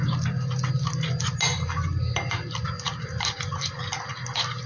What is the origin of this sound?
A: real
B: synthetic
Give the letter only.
A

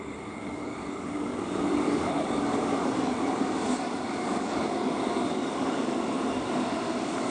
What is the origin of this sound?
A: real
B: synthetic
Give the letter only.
B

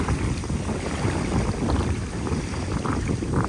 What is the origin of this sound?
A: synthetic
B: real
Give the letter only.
B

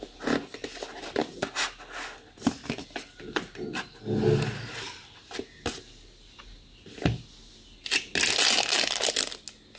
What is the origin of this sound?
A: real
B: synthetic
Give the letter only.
A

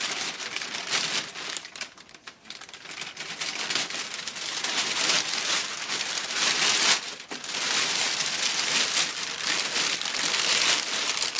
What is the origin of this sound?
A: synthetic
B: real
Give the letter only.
B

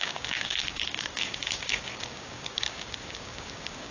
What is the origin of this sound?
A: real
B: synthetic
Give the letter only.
B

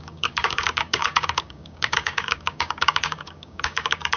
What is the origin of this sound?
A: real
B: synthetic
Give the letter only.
B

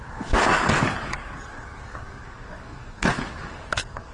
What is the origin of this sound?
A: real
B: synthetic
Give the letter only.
B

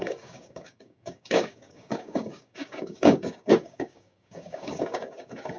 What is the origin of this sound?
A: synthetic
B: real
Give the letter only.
A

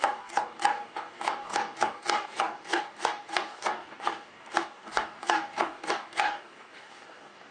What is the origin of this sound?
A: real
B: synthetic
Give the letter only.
B